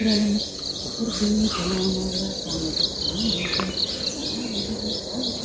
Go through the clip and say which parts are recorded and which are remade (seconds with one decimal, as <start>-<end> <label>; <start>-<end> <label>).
0.0-1.0 remade; 1.0-3.8 recorded; 3.8-4.2 remade; 4.2-5.4 recorded